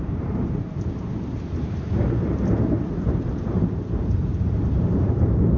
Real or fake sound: fake